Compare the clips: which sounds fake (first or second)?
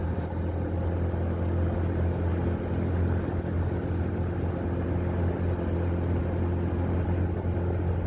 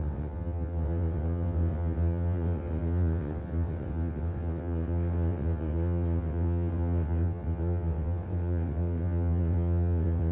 second